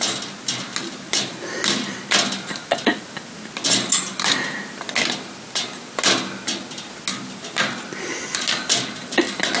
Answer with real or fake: real